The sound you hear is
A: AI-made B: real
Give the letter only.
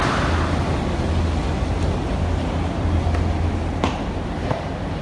B